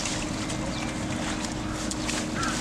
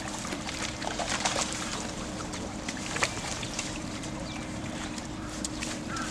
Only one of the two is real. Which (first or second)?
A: first